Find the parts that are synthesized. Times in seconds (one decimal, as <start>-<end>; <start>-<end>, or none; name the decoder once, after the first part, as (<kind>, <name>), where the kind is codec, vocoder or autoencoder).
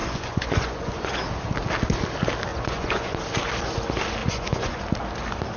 0.0-1.1 (vocoder, Vocos); 2.5-3.2; 4.2-4.8